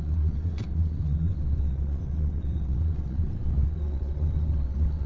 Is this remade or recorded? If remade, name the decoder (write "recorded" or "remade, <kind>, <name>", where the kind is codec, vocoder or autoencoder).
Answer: remade, vocoder, WaveNeXt